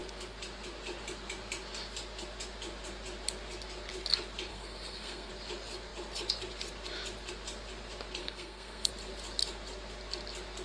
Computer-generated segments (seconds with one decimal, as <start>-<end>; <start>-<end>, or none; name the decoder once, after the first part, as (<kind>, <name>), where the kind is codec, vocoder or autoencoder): 4.5-5.3 (codec, SNAC); 8.2-8.9